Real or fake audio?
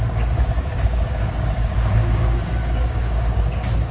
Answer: fake